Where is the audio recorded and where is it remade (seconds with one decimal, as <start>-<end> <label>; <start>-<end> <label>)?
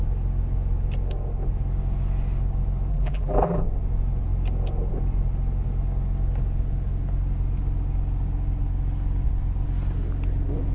0.0-2.9 recorded; 2.9-3.6 remade; 3.6-10.7 recorded